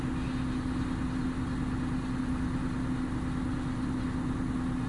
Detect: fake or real real